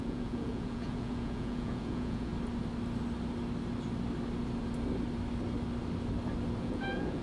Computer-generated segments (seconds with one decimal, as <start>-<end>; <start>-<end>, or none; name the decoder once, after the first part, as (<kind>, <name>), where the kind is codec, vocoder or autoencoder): 0.0-2.3 (vocoder, Vocos); 6.6-7.2